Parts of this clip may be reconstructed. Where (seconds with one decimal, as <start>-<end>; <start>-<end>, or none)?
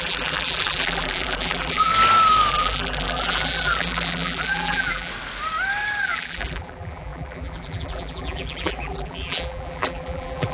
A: 0.0-1.9; 2.5-5.1; 6.0-10.5